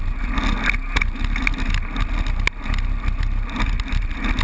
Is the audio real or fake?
real